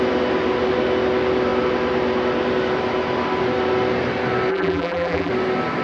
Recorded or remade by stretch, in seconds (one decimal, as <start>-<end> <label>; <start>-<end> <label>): 0.0-4.5 recorded; 4.5-5.3 remade; 5.3-5.8 recorded